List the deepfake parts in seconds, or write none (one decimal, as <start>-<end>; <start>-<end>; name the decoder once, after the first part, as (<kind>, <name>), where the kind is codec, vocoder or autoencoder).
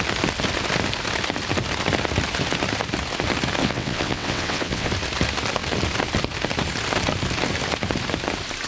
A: 3.6-4.9 (vocoder, WaveNeXt)